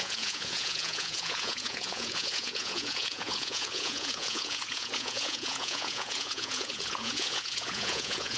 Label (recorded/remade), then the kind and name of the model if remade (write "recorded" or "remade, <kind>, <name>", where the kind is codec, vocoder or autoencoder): remade, vocoder, Vocos